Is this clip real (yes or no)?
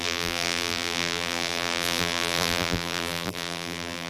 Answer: no